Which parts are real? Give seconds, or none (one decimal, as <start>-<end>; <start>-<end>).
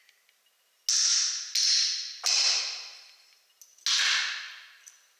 0.0-5.2